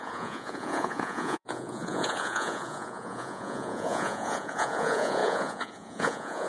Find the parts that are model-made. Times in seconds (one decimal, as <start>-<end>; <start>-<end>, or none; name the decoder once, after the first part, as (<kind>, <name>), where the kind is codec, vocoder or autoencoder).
0.0-6.5 (vocoder, Vocos)